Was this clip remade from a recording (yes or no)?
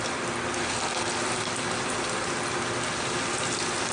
no